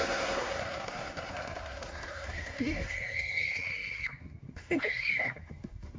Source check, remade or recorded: remade